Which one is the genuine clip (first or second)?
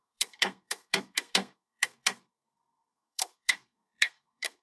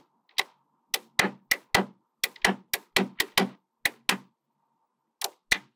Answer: second